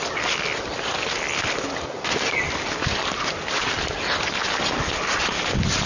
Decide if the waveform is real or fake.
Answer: real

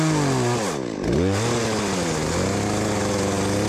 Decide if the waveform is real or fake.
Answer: real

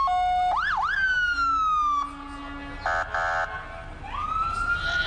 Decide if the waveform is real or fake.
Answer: real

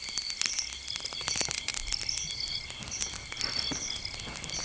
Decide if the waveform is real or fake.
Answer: real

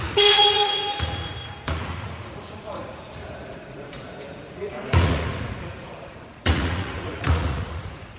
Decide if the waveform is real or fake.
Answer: fake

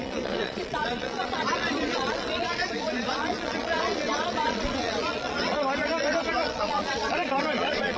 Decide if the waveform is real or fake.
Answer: fake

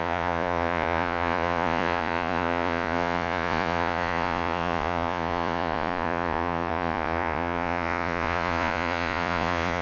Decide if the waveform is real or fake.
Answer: fake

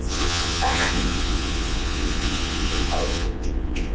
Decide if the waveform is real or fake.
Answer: fake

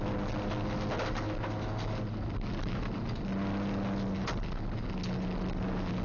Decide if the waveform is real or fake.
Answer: real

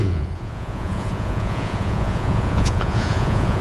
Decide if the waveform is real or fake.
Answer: fake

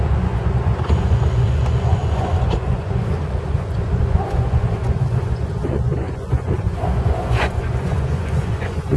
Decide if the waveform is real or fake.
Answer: fake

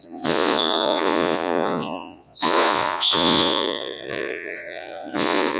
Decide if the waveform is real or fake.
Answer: fake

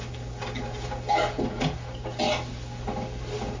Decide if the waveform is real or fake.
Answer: real